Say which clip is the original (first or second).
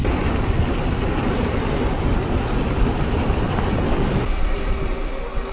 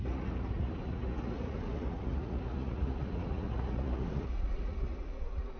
first